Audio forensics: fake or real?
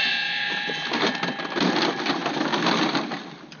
real